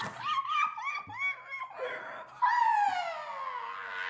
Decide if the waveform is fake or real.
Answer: real